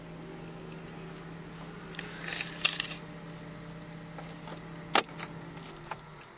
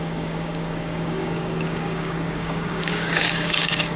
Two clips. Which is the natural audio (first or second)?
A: first